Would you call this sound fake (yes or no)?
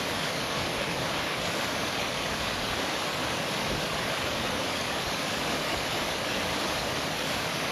yes